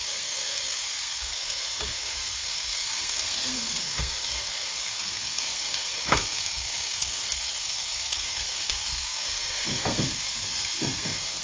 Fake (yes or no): yes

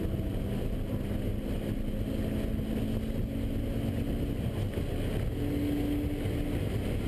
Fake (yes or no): no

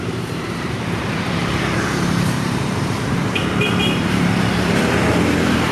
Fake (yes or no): yes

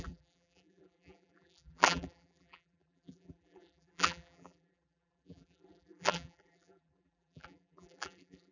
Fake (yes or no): yes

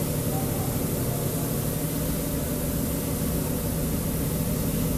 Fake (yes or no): no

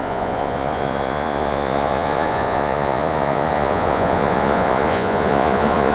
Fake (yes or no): yes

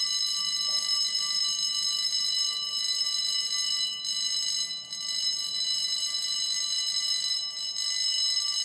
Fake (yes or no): no